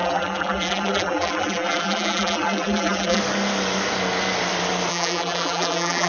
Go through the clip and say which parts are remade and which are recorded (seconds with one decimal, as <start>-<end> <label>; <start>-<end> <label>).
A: 0.0-3.2 remade; 3.2-4.9 recorded; 4.9-6.1 remade

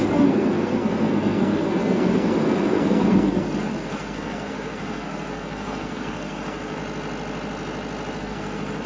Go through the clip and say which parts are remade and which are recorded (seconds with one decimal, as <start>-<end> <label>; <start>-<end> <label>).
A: 0.0-6.8 remade; 6.8-8.2 recorded; 8.2-8.9 remade

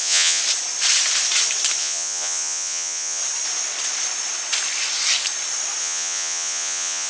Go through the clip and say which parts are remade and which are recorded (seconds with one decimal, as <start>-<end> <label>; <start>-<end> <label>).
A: 0.0-0.4 remade; 0.4-1.8 recorded; 1.8-3.2 remade; 3.2-5.8 recorded; 5.8-7.1 remade

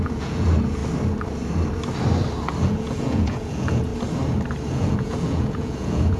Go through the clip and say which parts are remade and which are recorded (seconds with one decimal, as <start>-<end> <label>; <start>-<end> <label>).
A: 0.0-0.8 remade; 0.8-2.6 recorded; 2.6-3.9 remade; 3.9-4.7 recorded; 4.7-6.2 remade

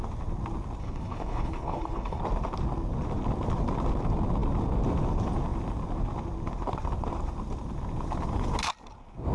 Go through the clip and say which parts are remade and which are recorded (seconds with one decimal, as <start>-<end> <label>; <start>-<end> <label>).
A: 0.0-0.8 recorded; 0.8-2.2 remade; 2.2-9.3 recorded

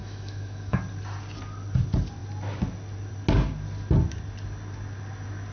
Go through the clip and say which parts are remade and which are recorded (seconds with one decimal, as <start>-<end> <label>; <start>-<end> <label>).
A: 0.0-0.8 remade; 0.8-5.5 recorded

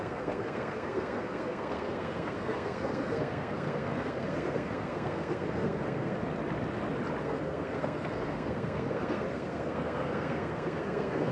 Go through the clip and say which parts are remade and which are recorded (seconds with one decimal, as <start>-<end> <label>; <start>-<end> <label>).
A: 0.0-6.2 remade; 6.2-7.2 recorded; 7.2-11.3 remade

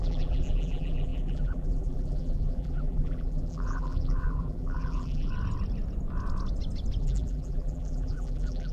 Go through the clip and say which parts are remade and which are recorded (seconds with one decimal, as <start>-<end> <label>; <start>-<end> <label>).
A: 0.0-5.3 remade; 5.3-7.0 recorded; 7.0-8.7 remade